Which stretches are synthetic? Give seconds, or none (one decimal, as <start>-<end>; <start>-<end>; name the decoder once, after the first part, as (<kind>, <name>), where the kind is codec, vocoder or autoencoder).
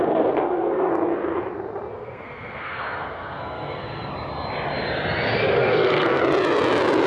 0.0-0.9 (codec, SNAC); 1.9-4.1; 5.4-6.2